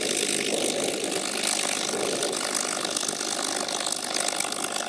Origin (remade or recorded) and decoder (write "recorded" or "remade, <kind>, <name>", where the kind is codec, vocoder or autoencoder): recorded